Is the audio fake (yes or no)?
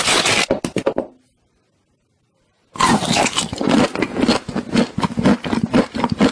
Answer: no